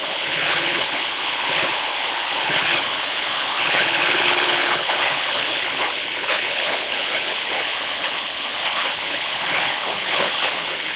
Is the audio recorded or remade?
remade